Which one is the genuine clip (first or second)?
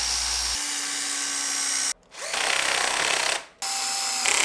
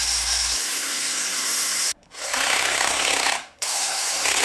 first